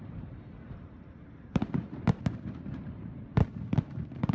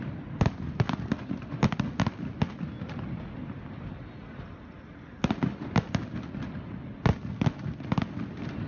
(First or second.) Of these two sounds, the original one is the second